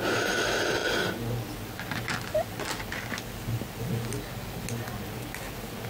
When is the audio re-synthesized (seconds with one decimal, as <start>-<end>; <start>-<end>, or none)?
none